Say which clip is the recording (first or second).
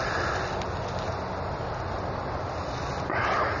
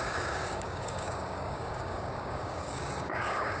first